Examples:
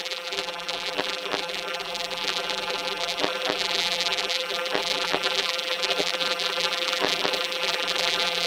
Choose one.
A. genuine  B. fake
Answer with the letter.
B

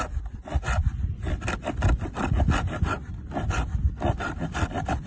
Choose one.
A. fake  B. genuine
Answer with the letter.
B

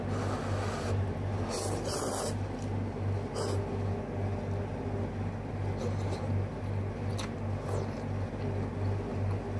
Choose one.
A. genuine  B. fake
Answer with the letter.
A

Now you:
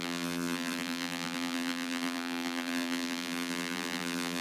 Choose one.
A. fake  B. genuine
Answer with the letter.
A